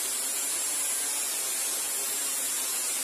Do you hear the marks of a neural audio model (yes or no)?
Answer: no